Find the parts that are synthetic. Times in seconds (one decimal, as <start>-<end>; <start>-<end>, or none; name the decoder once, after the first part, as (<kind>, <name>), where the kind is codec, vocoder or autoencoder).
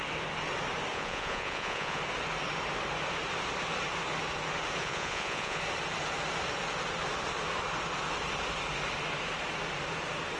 0.9-2.0 (vocoder, Vocos); 4.8-5.6